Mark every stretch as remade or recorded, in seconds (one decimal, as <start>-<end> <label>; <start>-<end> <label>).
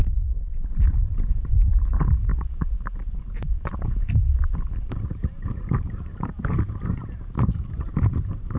0.0-8.6 remade